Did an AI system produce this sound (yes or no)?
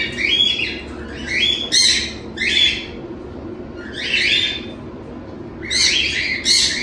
no